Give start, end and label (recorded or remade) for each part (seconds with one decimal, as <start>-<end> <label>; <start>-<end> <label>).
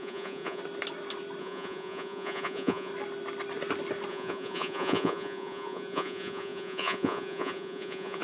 0.0-0.6 remade; 0.6-1.4 recorded; 1.4-2.9 remade; 2.9-4.1 recorded; 4.1-8.2 remade